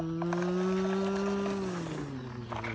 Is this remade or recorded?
recorded